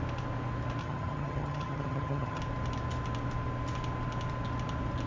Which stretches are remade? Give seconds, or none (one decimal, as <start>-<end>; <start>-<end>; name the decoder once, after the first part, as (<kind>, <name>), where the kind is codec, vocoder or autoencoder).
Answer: 0.8-2.4 (vocoder, HiFi-GAN)